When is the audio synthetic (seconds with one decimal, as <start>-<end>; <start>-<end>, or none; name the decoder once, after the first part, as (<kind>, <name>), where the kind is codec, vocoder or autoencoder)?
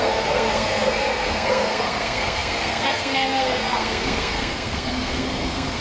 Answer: 0.0-5.8 (codec, SNAC)